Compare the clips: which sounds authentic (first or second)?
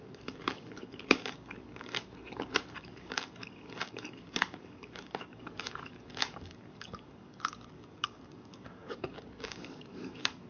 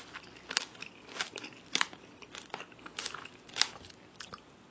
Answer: second